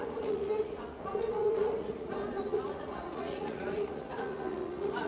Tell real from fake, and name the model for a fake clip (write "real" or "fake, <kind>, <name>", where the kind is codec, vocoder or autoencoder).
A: fake, vocoder, Vocos